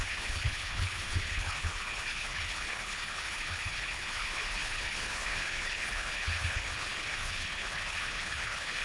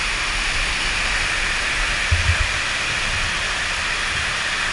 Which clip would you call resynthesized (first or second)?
first